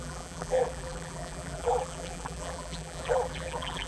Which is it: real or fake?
fake